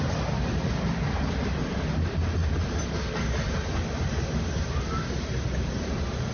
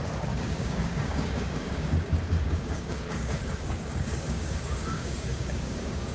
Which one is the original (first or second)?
first